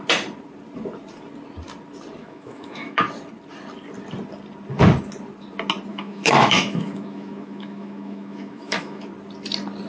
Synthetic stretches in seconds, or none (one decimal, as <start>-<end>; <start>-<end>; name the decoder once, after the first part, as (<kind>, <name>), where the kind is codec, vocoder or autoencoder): 2.2-3.0 (autoencoder, DAC-VAE); 5.9-9.1